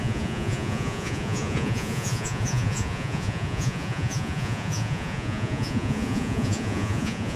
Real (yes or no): no